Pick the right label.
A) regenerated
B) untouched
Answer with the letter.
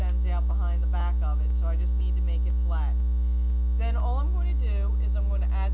B